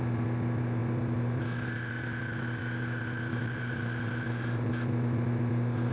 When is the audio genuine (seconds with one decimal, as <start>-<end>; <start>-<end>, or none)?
0.0-3.3; 4.7-5.9